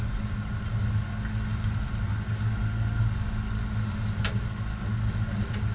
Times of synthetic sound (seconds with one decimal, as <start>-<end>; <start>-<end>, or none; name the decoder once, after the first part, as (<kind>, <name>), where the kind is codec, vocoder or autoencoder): none